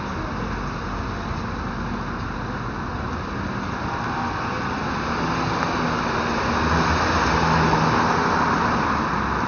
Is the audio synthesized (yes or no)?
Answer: no